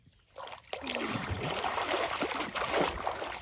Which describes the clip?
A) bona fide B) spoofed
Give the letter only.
A